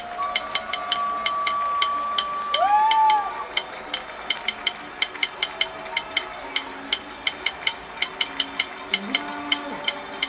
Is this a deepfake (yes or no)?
no